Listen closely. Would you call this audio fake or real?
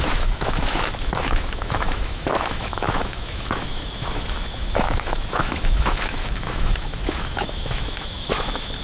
fake